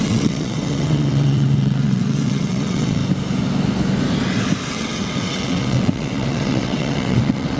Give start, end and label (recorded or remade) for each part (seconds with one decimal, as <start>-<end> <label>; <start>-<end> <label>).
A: 0.0-3.0 remade; 3.0-4.7 recorded; 4.7-7.6 remade